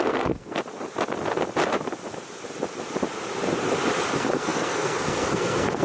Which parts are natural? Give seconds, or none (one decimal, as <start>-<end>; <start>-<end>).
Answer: 0.6-4.1